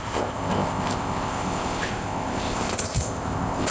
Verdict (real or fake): fake